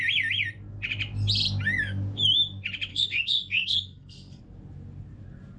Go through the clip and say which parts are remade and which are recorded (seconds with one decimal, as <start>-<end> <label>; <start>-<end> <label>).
0.0-2.9 recorded; 2.9-4.4 remade; 4.4-5.6 recorded